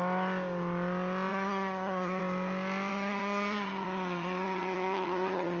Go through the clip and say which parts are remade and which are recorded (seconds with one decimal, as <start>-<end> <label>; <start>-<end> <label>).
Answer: 0.0-1.3 recorded; 1.3-2.2 remade; 2.2-2.9 recorded; 2.9-5.6 remade